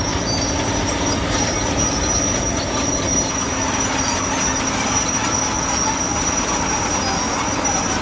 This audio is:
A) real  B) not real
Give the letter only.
A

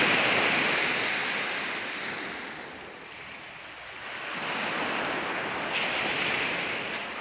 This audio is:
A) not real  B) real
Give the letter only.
B